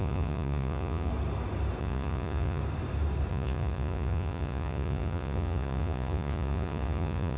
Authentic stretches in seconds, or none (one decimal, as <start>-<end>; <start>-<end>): 1.1-1.8; 2.6-3.3